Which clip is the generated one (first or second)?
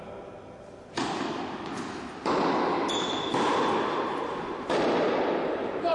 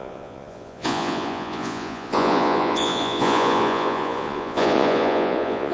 second